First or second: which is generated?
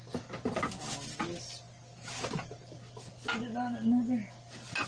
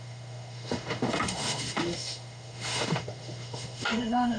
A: second